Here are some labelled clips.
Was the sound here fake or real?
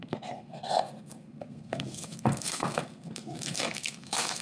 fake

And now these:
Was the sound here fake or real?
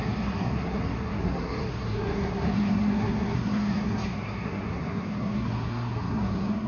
fake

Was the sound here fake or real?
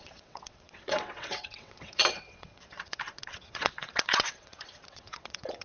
fake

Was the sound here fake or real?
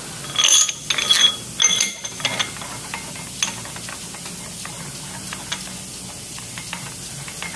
real